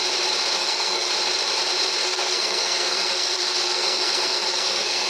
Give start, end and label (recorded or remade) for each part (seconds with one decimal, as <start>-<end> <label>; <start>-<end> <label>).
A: 0.0-0.6 recorded; 0.6-1.1 remade; 1.1-2.0 recorded; 2.0-5.1 remade